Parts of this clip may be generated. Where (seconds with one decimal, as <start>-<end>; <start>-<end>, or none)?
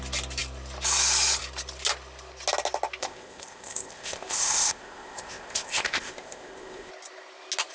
3.0-6.9